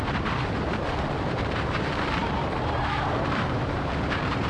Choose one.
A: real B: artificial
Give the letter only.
B